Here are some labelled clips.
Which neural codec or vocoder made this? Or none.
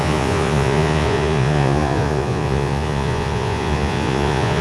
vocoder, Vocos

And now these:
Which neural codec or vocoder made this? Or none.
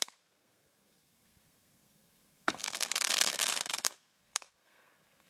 codec, SNAC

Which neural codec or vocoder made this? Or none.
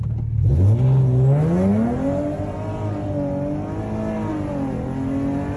none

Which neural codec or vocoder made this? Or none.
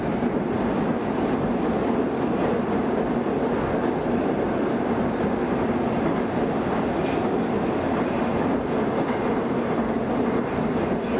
none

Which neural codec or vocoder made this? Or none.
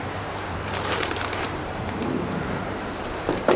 vocoder, BigVGAN v2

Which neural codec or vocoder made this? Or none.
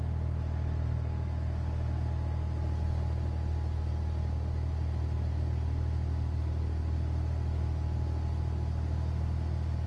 none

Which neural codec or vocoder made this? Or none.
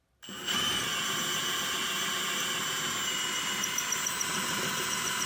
none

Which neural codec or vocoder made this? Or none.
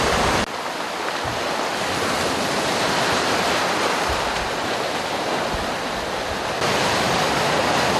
none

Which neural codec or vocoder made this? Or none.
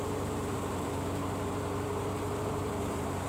vocoder, BigVGAN v2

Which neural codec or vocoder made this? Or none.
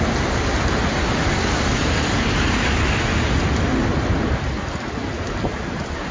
none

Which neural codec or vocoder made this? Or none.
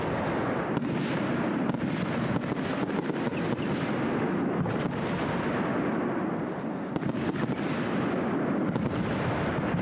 none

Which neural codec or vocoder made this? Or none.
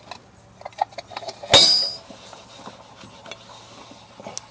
none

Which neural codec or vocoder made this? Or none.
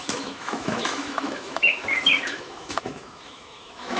autoencoder, DAC-VAE